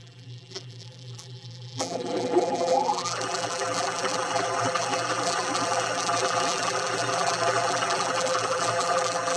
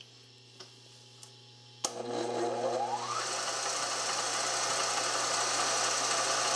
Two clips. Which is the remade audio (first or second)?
first